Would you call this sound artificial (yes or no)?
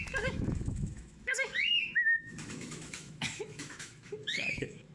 yes